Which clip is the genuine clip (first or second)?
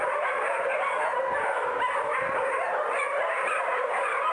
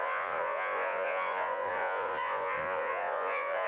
first